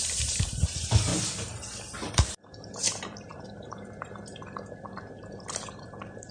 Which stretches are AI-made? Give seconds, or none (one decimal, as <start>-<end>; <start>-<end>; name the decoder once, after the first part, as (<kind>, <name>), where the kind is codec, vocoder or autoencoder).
0.0-1.1 (vocoder, BigVGAN v2); 2.1-6.3

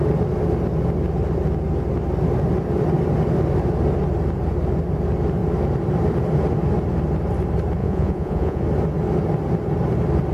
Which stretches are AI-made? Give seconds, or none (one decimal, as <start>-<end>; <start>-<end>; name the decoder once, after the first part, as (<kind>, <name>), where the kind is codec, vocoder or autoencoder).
7.8-8.6 (vocoder, Vocos)

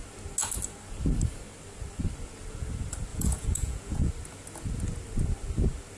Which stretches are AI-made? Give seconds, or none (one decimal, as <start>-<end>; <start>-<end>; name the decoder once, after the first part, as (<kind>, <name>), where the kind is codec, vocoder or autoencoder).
3.1-4.1 (vocoder, Vocos)

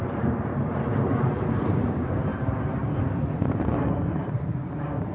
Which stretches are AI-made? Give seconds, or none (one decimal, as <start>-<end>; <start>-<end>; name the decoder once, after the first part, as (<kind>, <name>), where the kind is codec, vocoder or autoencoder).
0.0-2.3 (vocoder, BigVGAN v2); 4.0-5.1

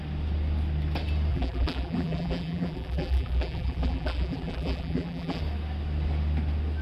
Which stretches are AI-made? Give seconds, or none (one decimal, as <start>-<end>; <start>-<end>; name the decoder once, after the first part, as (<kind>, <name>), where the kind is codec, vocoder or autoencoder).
1.3-5.4 (vocoder, BigVGAN v2)

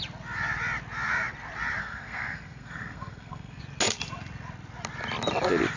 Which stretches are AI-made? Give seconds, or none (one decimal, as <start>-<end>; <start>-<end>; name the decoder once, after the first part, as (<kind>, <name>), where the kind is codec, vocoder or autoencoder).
1.8-3.6 (codec, SNAC)

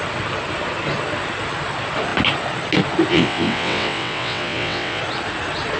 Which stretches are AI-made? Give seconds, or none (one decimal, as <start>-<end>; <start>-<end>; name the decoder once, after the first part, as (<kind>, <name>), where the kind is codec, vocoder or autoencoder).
3.1-5.0 (vocoder, WaveNeXt)

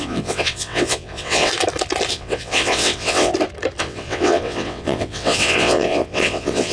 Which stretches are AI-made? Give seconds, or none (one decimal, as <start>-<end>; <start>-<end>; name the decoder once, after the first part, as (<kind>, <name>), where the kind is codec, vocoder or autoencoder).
0.0-1.5 (vocoder, WaveNeXt); 2.1-3.3; 3.8-6.7